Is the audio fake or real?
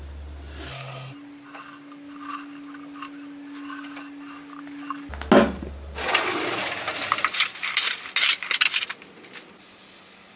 real